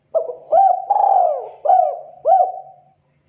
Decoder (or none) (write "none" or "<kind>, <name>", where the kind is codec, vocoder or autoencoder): none